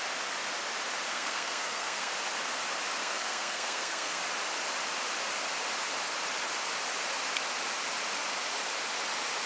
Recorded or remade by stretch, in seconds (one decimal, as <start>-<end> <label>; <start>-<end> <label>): 0.0-1.1 recorded; 1.1-2.1 remade; 2.1-3.0 recorded; 3.0-4.2 remade; 4.2-9.5 recorded